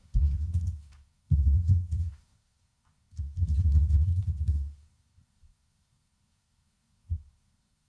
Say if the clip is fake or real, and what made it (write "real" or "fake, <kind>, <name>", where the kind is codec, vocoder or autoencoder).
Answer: fake, codec, SNAC